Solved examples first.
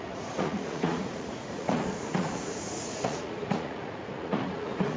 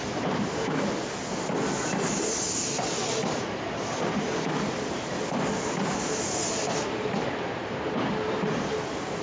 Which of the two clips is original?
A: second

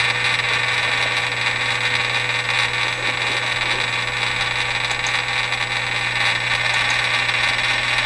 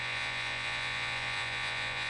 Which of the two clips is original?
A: first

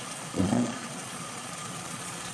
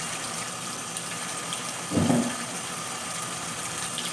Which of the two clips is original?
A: second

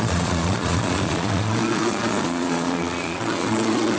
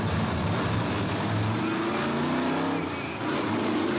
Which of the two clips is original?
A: second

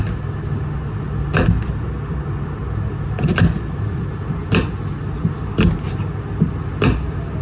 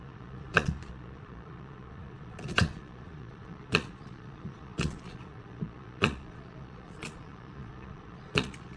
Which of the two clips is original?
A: first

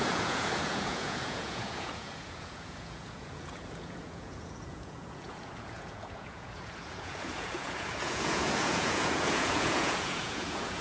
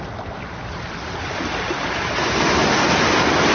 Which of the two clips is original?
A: second